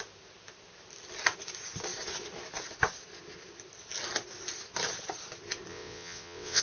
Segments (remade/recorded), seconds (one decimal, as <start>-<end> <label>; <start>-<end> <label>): 0.0-5.7 recorded; 5.7-6.6 remade